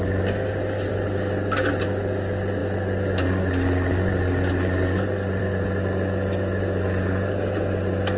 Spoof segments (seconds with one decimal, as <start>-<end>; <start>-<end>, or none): none